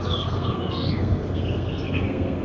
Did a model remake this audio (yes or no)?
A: yes